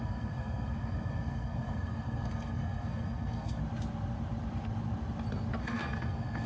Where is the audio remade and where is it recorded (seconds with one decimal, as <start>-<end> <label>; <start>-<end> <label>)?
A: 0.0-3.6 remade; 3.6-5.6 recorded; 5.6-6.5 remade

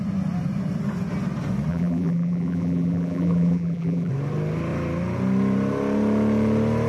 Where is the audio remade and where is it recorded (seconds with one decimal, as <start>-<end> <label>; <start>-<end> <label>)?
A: 0.0-1.7 recorded; 1.7-4.1 remade; 4.1-6.9 recorded

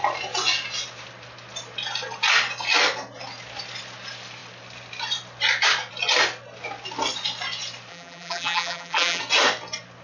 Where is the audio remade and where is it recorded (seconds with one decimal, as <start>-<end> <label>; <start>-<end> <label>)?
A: 0.0-7.9 recorded; 7.9-9.2 remade; 9.2-10.0 recorded

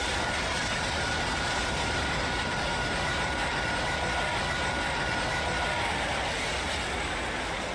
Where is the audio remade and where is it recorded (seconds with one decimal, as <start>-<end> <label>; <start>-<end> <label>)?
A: 0.0-3.5 remade; 3.5-7.7 recorded

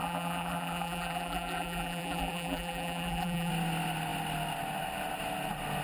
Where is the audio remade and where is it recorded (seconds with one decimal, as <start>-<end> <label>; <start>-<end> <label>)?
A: 0.0-3.5 remade; 3.5-5.8 recorded